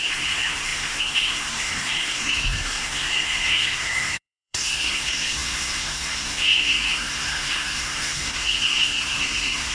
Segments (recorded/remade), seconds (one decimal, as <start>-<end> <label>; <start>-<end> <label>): 0.0-9.7 remade